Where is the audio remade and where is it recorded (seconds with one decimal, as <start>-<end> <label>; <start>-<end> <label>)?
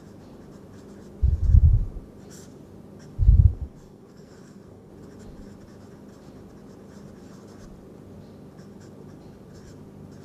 0.0-3.5 recorded; 3.5-4.9 remade; 4.9-10.2 recorded